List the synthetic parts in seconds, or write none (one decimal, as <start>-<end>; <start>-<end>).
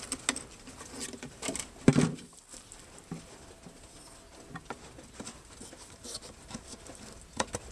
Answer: none